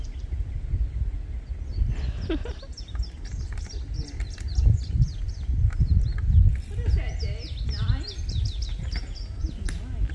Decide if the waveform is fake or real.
real